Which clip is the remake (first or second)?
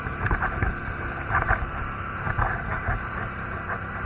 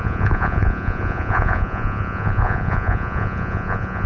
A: second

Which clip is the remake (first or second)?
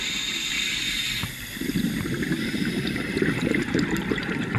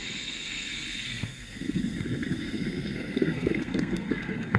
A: second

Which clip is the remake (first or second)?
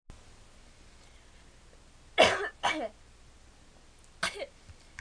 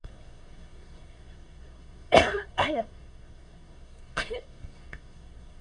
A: second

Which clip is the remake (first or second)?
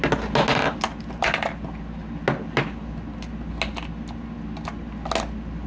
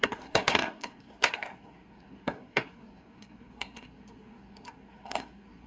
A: second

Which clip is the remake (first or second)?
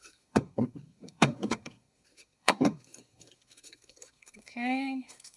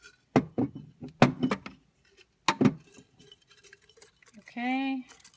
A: first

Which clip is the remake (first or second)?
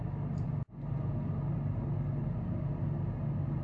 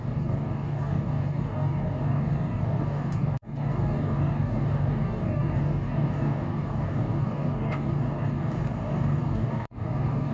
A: second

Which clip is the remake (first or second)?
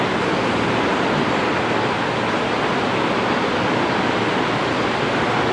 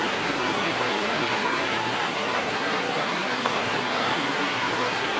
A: second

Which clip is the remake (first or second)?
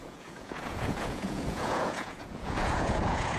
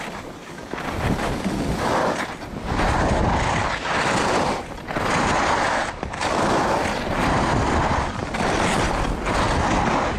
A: first